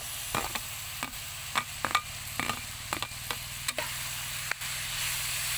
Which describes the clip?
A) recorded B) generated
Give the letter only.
A